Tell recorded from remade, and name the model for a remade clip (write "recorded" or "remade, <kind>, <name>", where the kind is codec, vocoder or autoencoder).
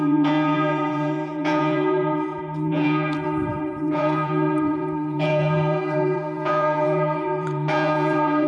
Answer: remade, vocoder, Vocos